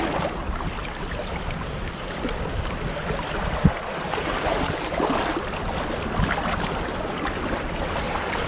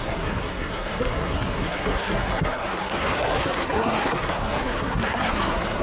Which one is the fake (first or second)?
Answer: second